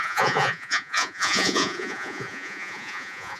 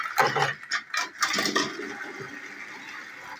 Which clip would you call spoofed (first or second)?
first